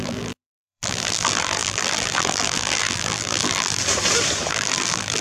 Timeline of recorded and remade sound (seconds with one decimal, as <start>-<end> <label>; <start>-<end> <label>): 0.0-3.8 remade; 3.8-4.5 recorded; 4.5-5.2 remade